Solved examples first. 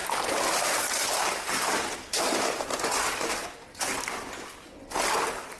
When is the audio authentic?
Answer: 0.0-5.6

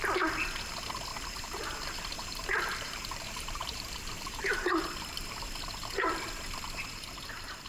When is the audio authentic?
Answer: 0.0-1.1; 5.7-7.7

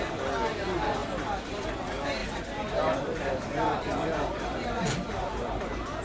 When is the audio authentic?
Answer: 0.0-2.2

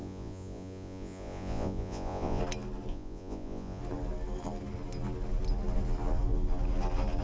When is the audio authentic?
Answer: 2.4-2.9; 3.8-7.2